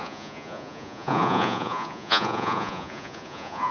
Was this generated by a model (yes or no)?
yes